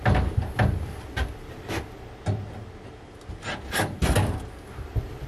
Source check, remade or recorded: recorded